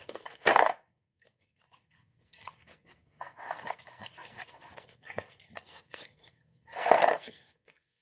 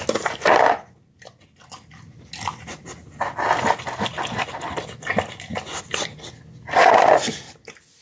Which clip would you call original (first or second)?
second